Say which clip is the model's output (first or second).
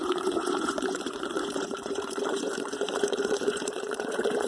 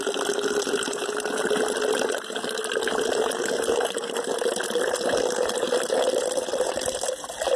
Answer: first